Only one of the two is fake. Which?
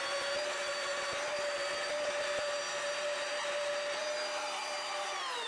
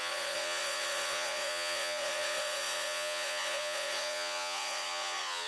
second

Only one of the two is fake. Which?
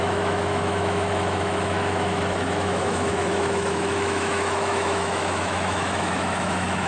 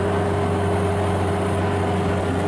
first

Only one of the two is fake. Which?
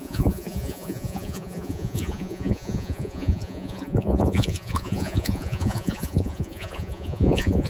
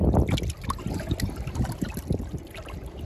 first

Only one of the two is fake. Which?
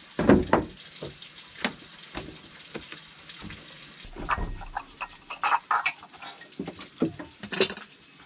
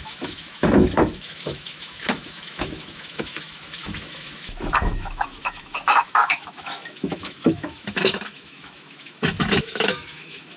second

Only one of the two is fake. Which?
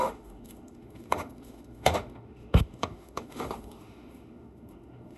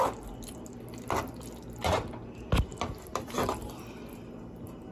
first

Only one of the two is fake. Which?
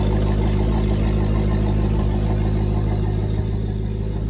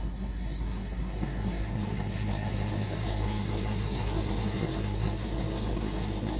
second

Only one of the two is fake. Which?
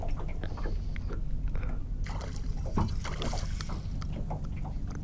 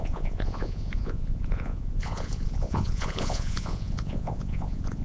second